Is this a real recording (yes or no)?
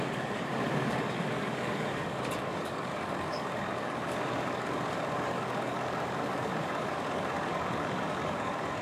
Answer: no